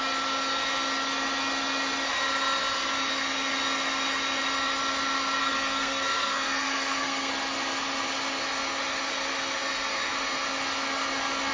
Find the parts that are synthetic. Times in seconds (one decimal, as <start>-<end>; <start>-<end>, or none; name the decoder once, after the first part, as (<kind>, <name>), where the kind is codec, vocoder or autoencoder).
5.4-7.3 (codec, SNAC)